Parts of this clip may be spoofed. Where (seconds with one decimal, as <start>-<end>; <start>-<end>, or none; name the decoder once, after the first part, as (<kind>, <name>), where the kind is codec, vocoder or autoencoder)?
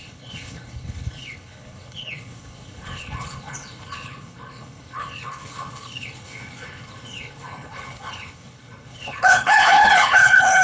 0.0-10.6 (codec, HILCodec)